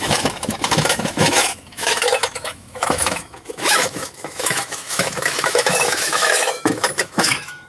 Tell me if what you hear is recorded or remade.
remade